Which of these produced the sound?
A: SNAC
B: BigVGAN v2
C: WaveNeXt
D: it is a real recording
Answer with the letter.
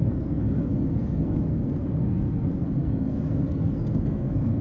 A